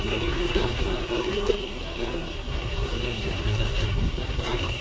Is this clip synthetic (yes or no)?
yes